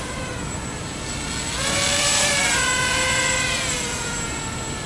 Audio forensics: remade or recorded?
recorded